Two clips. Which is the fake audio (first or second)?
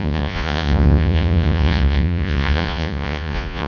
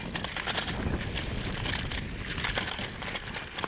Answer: first